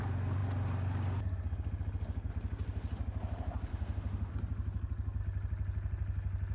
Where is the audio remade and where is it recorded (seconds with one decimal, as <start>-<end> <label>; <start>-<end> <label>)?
0.0-3.7 recorded; 3.7-4.3 remade; 4.3-6.5 recorded